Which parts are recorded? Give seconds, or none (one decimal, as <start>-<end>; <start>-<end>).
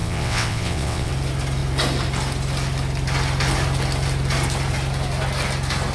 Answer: 1.1-5.9